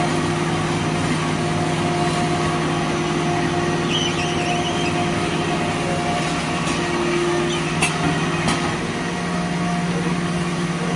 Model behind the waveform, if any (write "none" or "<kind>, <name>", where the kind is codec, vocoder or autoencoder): none